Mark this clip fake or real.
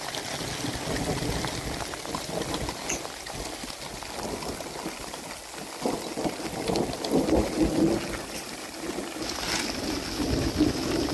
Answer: real